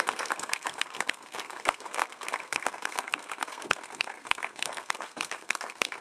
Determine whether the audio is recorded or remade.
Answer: remade